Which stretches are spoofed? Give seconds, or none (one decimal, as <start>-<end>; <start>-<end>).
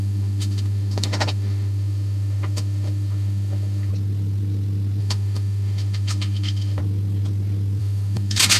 0.0-3.9; 5.0-6.8; 7.8-8.6